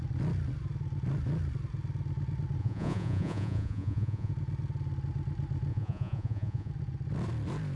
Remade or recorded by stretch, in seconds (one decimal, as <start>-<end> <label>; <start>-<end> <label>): 0.0-2.6 recorded; 2.6-4.3 remade; 4.3-5.7 recorded; 5.7-6.7 remade; 6.7-7.8 recorded